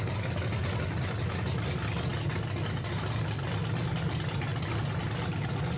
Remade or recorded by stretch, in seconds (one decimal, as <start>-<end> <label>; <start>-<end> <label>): 0.0-0.6 recorded; 0.6-1.3 remade; 1.3-5.8 recorded